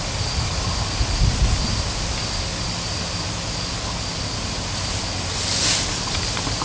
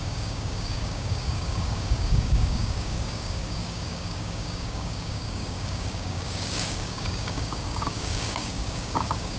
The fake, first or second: second